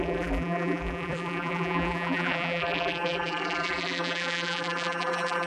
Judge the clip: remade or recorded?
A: remade